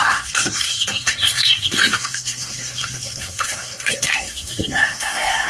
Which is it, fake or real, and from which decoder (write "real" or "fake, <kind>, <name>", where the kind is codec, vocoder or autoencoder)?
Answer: fake, codec, SNAC